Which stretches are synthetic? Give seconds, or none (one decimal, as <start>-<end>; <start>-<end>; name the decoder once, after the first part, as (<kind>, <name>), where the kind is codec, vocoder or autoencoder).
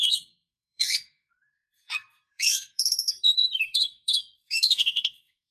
0.0-5.5 (codec, SNAC)